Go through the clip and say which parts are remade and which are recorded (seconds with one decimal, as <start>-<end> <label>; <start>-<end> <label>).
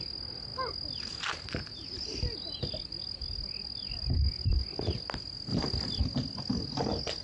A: 0.0-5.5 recorded; 5.5-6.0 remade; 6.0-7.2 recorded